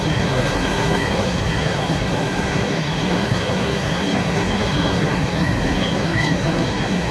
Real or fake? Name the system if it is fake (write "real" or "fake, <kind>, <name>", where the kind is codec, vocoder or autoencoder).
fake, codec, SNAC